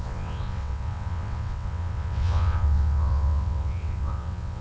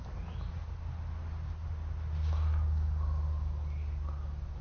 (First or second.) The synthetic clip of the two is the first